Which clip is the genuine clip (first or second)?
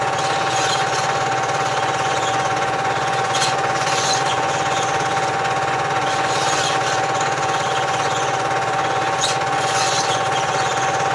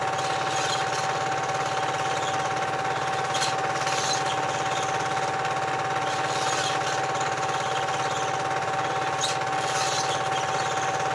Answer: second